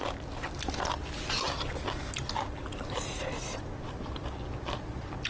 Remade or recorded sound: recorded